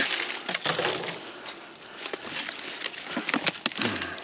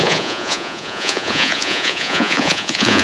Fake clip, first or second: second